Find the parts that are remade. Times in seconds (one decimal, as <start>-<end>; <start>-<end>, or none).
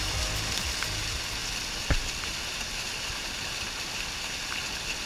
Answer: none